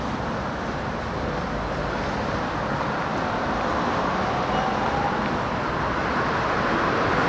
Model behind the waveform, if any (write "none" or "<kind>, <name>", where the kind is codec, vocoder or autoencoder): none